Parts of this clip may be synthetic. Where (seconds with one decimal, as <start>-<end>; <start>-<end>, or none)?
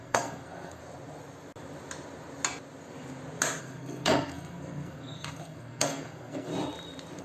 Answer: 0.0-0.8; 3.6-6.5